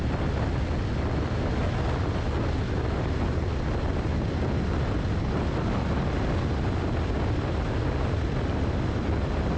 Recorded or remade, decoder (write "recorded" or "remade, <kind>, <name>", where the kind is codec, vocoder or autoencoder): recorded